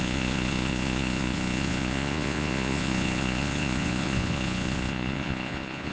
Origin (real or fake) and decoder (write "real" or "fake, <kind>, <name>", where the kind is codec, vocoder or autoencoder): fake, vocoder, Vocos